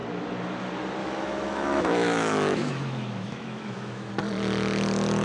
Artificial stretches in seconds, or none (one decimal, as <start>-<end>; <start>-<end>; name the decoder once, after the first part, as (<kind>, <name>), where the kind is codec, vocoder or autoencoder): 1.0-4.1 (autoencoder, DAC-VAE)